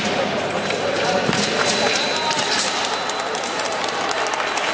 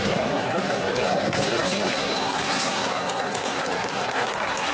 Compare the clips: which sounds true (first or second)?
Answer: first